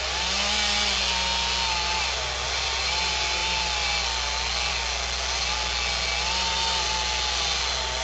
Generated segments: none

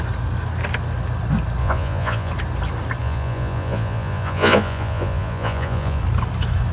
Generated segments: 1.6-2.3 (vocoder, Vocos); 3.0-6.0

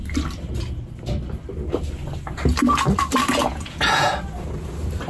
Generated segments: 3.4-4.1 (vocoder, Vocos)